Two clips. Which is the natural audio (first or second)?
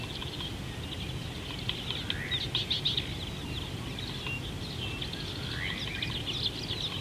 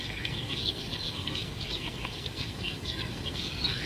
first